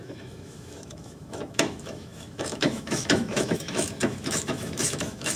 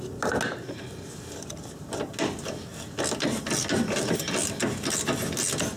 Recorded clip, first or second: second